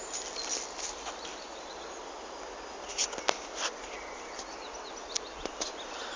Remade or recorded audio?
recorded